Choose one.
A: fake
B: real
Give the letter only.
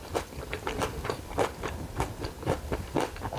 A